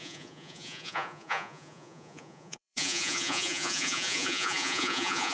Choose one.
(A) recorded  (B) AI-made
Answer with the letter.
B